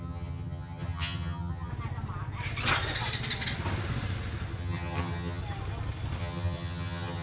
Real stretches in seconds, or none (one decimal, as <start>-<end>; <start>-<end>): 1.7-4.6; 5.4-6.2

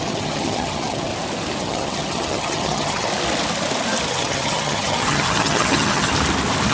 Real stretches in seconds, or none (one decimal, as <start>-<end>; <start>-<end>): 1.1-1.6; 3.1-4.1; 6.1-6.7

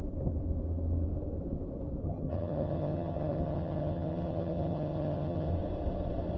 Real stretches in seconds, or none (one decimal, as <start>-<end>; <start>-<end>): 0.0-2.0; 5.5-6.4

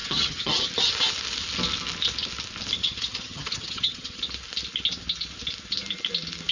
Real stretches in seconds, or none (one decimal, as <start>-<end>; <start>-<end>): 0.6-2.8; 4.2-6.5